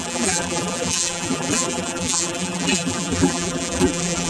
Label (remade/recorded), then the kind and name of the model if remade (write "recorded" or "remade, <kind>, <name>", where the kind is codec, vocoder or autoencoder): remade, vocoder, BigVGAN v2